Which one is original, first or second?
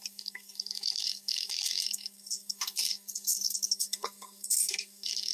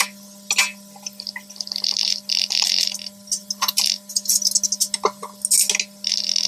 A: second